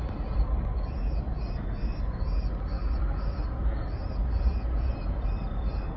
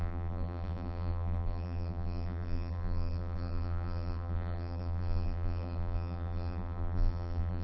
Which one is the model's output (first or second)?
second